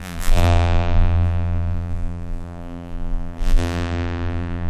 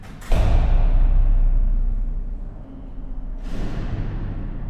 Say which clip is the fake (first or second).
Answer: first